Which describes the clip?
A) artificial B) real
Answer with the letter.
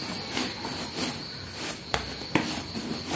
B